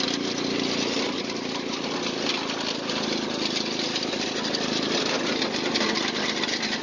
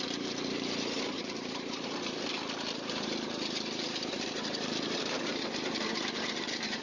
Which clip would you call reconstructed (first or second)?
second